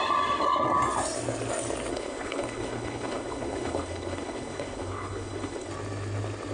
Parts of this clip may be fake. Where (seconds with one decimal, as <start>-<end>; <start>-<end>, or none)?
1.9-5.7